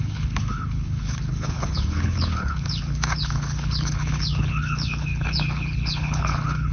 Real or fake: fake